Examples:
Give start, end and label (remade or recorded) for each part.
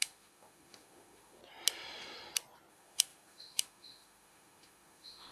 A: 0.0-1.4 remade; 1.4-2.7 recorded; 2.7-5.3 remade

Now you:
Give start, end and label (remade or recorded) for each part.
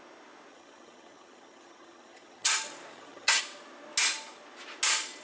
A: 0.0-0.5 recorded; 0.5-2.5 remade; 2.5-2.9 recorded; 2.9-3.4 remade; 3.4-5.2 recorded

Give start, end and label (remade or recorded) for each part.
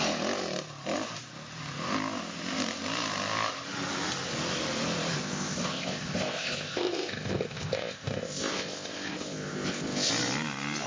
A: 0.0-5.2 recorded; 5.2-10.1 remade; 10.1-10.9 recorded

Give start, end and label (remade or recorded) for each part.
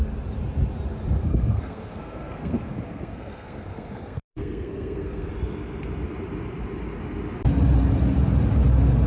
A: 0.0-1.2 recorded; 1.2-5.3 remade; 5.3-9.1 recorded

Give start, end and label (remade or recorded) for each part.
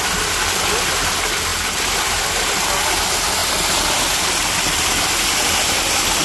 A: 0.0-6.2 recorded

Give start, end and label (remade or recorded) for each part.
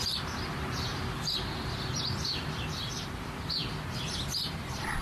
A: 0.0-5.0 remade